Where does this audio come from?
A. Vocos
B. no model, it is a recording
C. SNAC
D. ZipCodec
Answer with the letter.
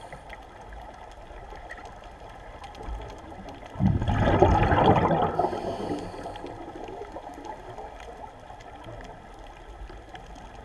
B